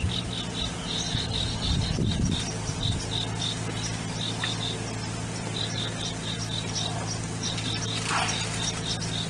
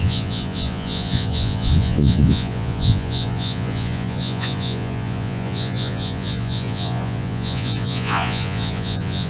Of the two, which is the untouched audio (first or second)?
first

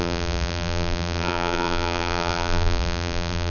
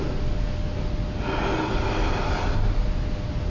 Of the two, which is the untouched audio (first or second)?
second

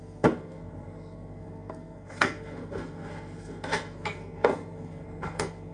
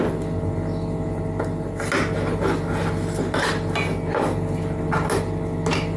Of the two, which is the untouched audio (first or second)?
second